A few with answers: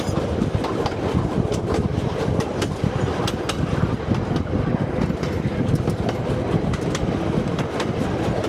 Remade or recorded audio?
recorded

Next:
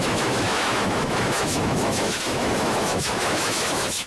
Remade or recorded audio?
remade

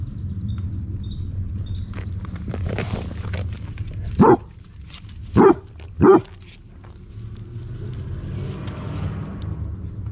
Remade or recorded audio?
recorded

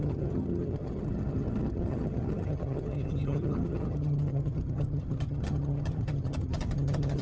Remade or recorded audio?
remade